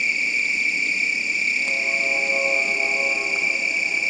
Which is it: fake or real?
real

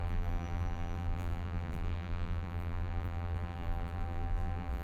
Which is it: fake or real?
fake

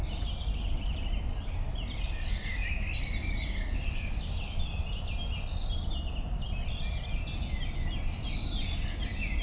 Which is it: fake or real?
real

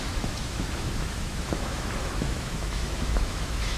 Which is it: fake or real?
fake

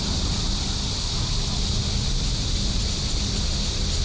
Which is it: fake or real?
real